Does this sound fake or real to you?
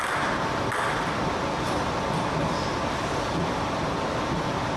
real